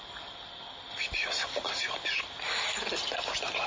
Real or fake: real